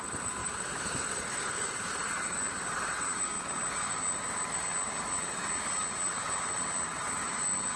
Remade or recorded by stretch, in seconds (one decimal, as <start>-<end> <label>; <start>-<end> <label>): 0.0-0.4 recorded; 0.4-2.2 remade; 2.2-7.8 recorded